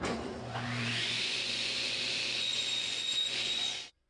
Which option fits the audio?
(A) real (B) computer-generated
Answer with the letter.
B